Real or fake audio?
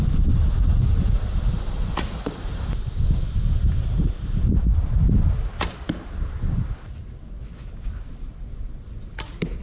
real